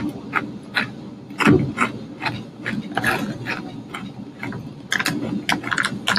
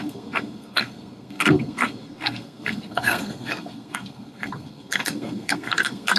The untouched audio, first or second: first